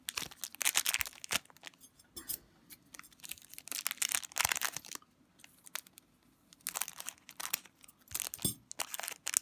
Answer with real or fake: real